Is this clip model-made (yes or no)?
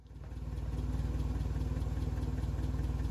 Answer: no